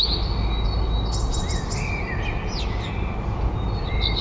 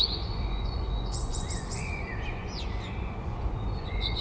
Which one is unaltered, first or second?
first